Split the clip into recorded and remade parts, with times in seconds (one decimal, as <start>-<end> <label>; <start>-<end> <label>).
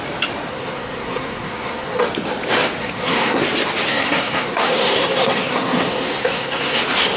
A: 0.0-0.5 recorded; 0.5-2.0 remade; 2.0-2.8 recorded; 2.8-3.4 remade; 3.4-3.9 recorded; 3.9-6.8 remade; 6.8-7.2 recorded